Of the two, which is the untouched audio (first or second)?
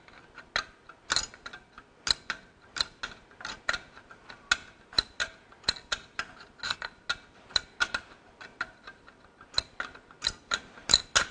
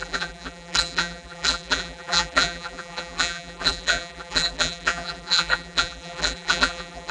first